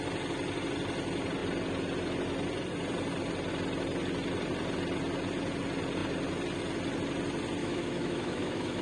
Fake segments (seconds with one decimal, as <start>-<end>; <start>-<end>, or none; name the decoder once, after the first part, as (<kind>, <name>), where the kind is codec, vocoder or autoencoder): 7.6-8.8 (autoencoder, DAC-VAE)

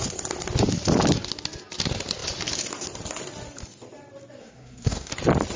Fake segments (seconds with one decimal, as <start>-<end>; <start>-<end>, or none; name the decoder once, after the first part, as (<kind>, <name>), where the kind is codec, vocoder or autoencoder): 4.4-5.1 (codec, SNAC)

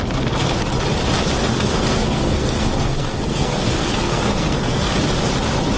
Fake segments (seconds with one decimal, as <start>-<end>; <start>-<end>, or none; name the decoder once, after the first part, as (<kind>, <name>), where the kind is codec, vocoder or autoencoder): 1.4-4.9 (codec, SNAC)

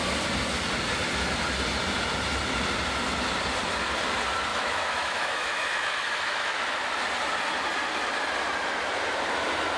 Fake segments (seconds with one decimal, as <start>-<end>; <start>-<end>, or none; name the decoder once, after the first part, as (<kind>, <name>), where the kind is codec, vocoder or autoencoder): 4.5-6.6 (autoencoder, DAC-VAE)

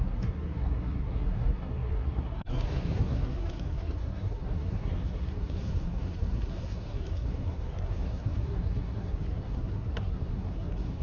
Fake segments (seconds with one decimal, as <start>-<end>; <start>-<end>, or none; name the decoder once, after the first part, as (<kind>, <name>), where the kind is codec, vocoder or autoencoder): 0.0-11.0 (codec, SNAC)

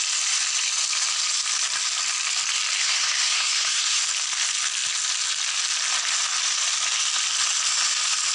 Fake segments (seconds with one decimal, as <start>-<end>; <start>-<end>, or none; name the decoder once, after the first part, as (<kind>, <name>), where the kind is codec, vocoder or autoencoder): 2.8-4.0 (codec, SNAC)

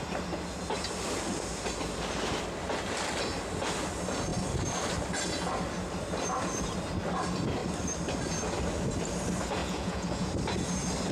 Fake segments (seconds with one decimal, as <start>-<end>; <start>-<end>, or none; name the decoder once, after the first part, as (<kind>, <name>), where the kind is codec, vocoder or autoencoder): 9.6-10.3 (vocoder, Vocos)

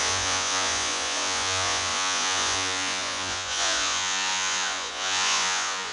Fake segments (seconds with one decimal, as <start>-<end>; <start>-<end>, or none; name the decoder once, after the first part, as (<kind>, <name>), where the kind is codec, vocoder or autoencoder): 0.0-5.9 (vocoder, Vocos)